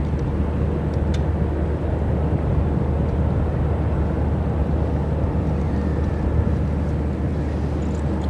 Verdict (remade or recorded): recorded